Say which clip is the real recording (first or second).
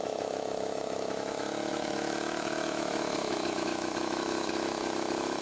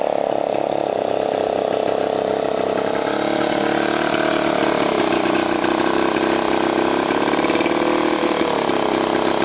second